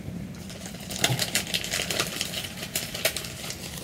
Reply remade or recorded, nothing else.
remade